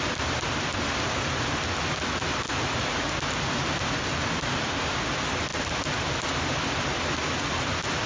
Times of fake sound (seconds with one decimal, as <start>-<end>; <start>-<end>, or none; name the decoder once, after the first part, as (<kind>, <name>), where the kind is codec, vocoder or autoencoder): none